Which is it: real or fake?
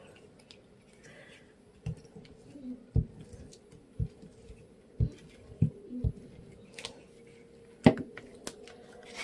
real